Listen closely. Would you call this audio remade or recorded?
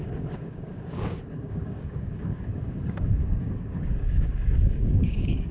remade